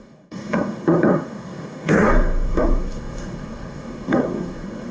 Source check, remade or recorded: remade